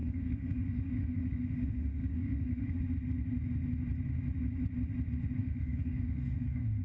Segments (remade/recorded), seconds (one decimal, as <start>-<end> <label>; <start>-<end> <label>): 0.0-2.8 remade; 2.8-5.4 recorded; 5.4-6.8 remade